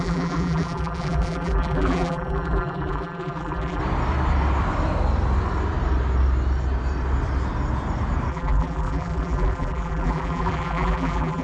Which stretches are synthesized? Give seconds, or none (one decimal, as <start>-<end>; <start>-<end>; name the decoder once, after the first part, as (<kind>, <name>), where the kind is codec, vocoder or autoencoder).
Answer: 0.0-3.8 (vocoder, BigVGAN v2); 8.3-11.4